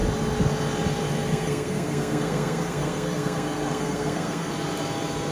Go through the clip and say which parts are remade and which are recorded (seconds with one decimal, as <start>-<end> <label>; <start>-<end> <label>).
0.0-1.3 recorded; 1.3-4.5 remade; 4.5-5.3 recorded